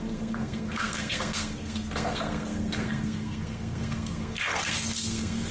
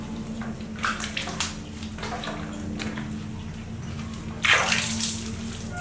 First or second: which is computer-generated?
first